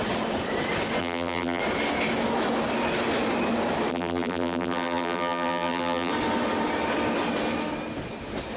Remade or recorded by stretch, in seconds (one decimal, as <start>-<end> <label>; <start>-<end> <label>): 0.0-1.0 recorded; 1.0-1.6 remade; 1.6-3.9 recorded; 3.9-6.1 remade; 6.1-8.6 recorded